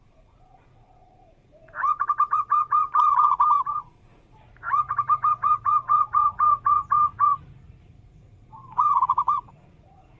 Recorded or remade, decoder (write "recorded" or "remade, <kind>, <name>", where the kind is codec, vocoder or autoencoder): remade, vocoder, Vocos